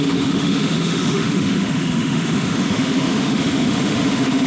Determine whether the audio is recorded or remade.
remade